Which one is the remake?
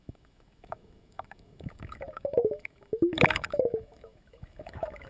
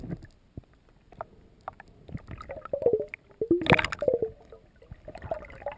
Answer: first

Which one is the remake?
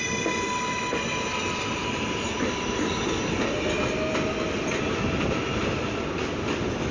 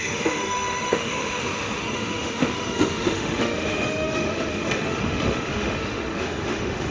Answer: second